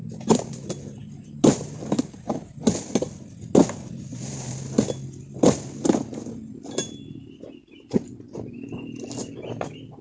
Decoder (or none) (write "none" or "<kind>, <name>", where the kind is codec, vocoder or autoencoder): none